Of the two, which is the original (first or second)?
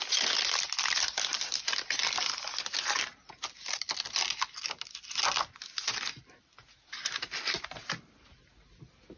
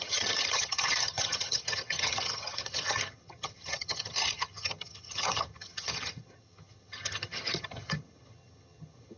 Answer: first